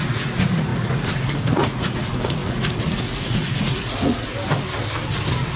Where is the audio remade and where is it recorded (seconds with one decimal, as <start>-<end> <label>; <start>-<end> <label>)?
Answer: 0.0-4.3 remade; 4.3-5.6 recorded